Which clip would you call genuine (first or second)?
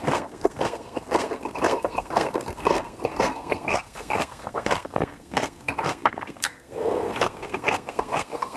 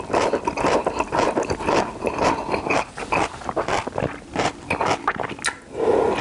second